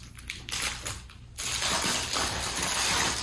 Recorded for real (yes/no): yes